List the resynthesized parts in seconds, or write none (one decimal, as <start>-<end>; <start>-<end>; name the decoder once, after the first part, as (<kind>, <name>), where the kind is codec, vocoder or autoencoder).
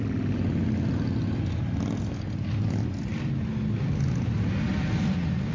none